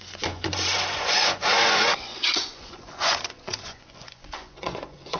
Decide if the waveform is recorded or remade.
remade